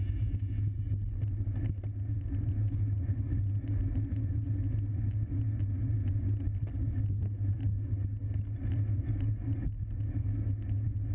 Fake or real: real